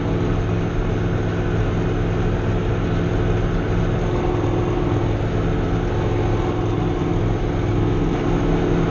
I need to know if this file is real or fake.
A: real